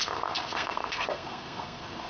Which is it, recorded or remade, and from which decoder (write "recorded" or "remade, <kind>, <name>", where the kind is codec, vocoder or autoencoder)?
remade, codec, SNAC